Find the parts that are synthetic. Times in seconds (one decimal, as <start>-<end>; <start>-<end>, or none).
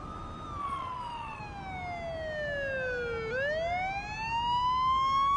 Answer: 0.6-1.4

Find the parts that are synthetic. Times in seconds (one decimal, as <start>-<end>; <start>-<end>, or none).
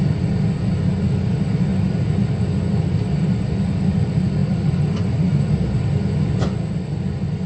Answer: none